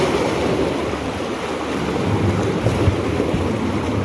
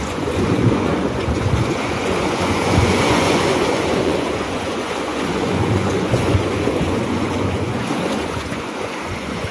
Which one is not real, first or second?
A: second